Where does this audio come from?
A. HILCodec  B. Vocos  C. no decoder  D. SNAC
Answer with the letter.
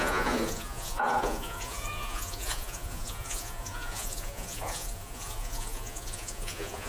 B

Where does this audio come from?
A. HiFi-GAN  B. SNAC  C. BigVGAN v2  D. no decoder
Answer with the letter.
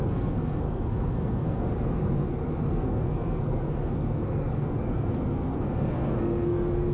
B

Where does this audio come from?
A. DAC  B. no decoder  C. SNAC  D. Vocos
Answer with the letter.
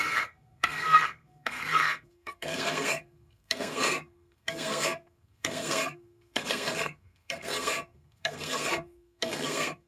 C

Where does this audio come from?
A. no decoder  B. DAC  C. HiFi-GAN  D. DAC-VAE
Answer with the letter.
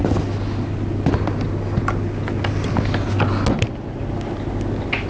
A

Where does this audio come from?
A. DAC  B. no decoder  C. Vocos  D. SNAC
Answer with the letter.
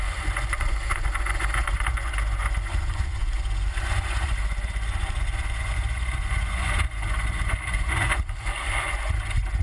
C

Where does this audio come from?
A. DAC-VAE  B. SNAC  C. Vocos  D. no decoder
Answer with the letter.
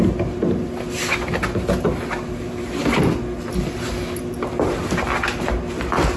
D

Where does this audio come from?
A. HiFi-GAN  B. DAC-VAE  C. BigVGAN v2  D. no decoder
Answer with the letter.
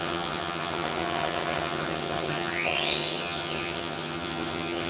A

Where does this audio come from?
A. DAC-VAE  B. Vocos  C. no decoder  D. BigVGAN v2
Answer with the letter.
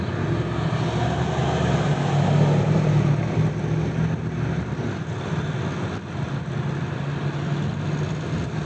C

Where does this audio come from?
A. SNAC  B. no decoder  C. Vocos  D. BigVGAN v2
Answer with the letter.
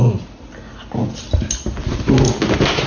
B